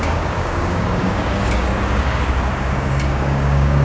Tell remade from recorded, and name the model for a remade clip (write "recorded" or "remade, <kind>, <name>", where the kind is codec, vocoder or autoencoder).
remade, codec, DAC